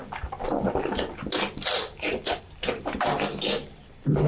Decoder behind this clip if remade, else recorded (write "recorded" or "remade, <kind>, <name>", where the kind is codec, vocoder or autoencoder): recorded